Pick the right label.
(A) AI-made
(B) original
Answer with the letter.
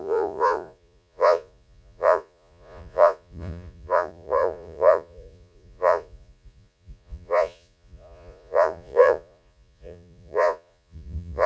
A